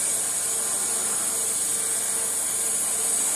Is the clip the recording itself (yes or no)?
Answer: yes